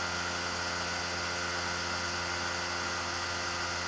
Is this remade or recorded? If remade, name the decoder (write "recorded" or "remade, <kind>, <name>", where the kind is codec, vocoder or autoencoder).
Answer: recorded